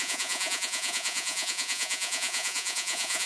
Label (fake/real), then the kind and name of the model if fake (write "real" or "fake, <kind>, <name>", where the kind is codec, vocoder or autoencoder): fake, vocoder, Vocos